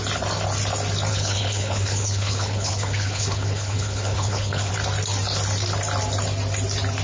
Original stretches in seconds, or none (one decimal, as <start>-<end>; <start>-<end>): 0.0-1.1; 4.7-7.0